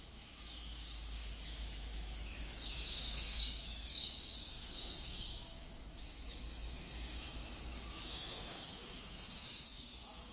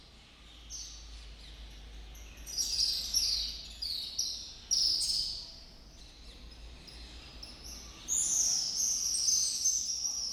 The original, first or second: second